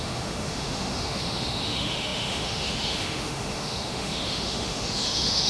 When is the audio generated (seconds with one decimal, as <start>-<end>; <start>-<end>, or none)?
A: 0.0-5.5